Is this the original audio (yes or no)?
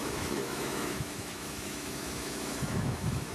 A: no